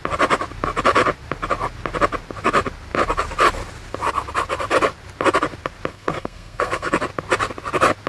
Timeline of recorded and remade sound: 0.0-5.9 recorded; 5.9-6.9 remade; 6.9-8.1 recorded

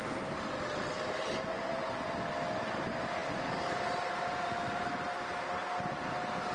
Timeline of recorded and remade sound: 0.0-1.5 recorded; 1.5-2.0 remade; 2.0-6.5 recorded

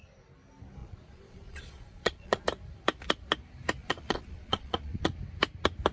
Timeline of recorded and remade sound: 0.0-0.8 recorded; 0.8-2.4 remade; 2.4-3.8 recorded; 3.8-5.1 remade; 5.1-5.9 recorded